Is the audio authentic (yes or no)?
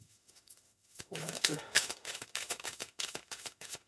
no